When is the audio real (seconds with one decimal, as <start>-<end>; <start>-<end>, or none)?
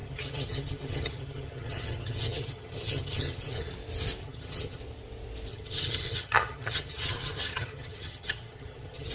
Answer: 3.7-4.2; 4.8-5.5